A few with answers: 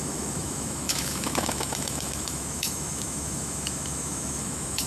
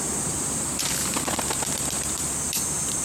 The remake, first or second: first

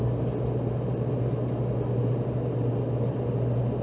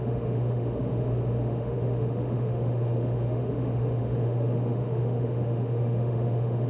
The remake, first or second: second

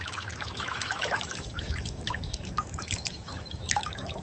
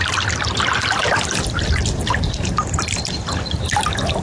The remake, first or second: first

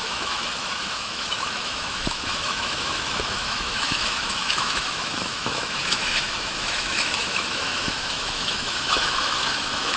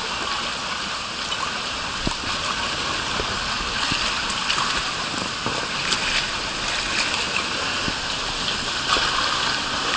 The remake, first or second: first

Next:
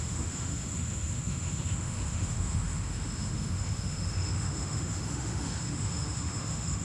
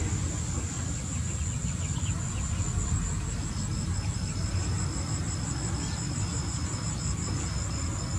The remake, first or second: first